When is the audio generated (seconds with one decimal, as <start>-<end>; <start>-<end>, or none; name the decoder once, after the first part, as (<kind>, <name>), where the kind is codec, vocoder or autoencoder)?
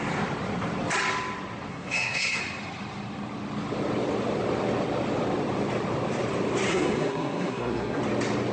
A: 1.7-2.4 (codec, SNAC); 6.7-8.0